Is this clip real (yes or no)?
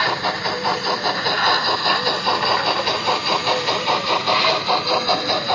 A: yes